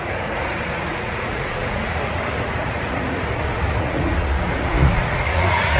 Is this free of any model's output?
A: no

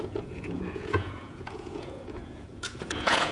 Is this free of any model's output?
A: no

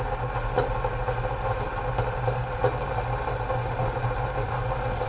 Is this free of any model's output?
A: yes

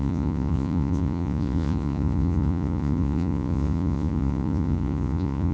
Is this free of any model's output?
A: no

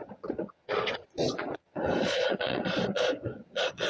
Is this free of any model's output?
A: no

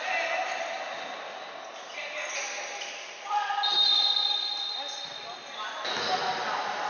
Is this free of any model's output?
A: yes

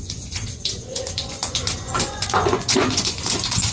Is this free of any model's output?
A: no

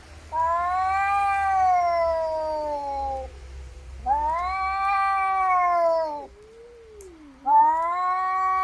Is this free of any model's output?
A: yes